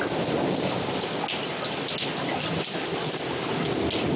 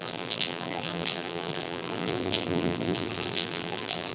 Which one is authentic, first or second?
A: first